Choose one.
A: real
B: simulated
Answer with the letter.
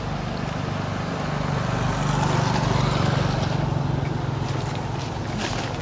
A